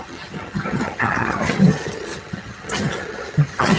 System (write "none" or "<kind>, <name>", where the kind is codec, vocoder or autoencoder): vocoder, HiFi-GAN